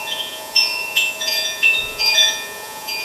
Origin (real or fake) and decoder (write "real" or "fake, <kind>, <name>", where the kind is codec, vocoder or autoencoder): fake, vocoder, Vocos